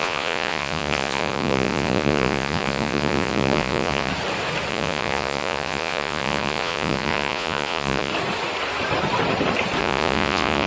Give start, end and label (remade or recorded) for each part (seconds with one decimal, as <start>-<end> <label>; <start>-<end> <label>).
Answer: 0.0-4.1 remade; 4.1-4.7 recorded; 4.7-8.1 remade; 8.1-9.8 recorded; 9.8-10.7 remade

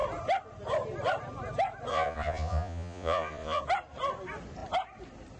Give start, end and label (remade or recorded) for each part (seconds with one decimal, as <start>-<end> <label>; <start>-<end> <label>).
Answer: 0.0-1.9 recorded; 1.9-3.6 remade; 3.6-5.4 recorded

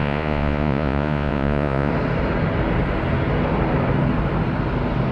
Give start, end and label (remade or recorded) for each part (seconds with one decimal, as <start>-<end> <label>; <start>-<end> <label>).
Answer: 0.0-1.9 remade; 1.9-5.1 recorded